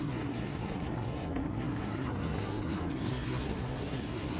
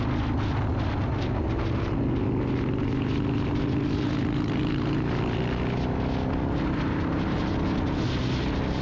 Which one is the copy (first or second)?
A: first